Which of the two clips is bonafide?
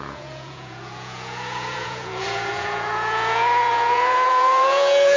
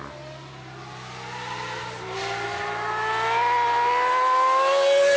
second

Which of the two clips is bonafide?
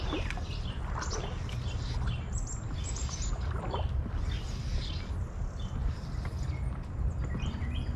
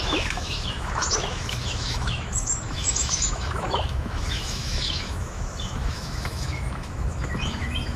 first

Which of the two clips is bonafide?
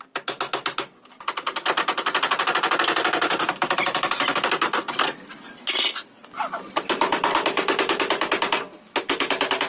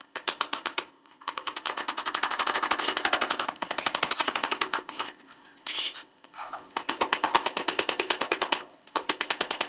first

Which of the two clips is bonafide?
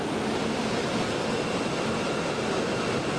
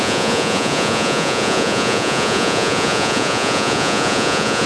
first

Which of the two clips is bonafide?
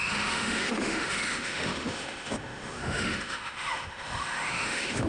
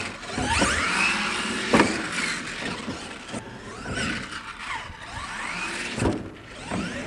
second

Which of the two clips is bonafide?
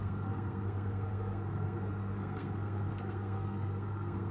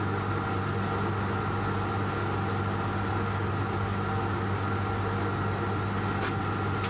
second